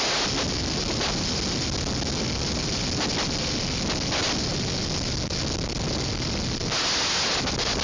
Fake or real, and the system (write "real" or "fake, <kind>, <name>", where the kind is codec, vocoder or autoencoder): real